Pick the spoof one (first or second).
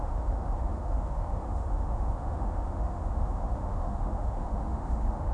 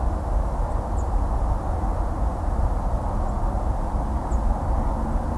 first